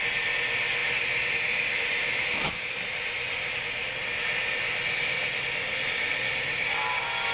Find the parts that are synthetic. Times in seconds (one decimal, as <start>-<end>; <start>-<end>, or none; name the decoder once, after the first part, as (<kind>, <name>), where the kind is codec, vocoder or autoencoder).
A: 0.8-3.9 (vocoder, BigVGAN v2)